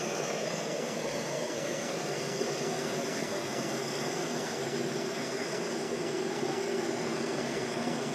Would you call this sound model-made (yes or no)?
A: yes